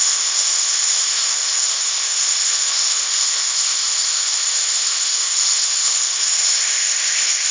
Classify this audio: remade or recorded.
remade